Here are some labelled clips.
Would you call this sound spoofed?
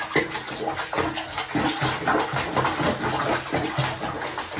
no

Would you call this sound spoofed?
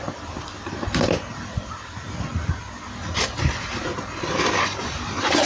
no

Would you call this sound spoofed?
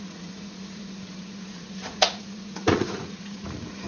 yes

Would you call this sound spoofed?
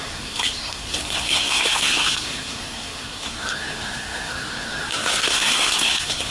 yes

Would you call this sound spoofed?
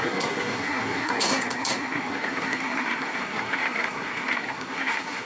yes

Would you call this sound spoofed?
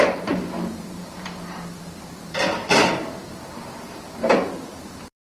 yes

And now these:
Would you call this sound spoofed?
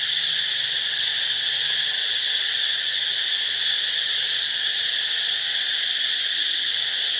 no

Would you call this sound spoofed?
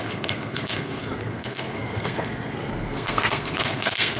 yes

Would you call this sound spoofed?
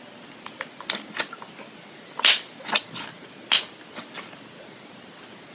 no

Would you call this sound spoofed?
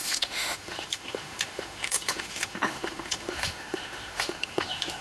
yes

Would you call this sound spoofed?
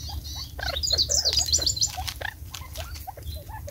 no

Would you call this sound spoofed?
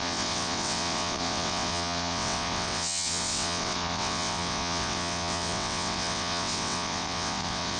yes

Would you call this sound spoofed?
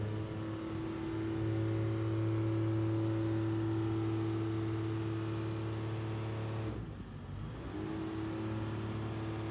no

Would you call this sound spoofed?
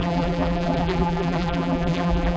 yes